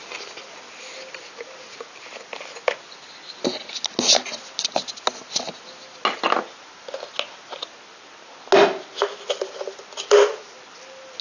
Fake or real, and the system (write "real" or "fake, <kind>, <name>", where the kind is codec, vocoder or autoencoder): real